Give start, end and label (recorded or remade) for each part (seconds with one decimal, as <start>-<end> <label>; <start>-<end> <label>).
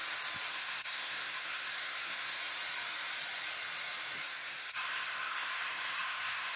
0.0-0.5 recorded; 0.5-2.4 remade; 2.4-4.2 recorded; 4.2-6.6 remade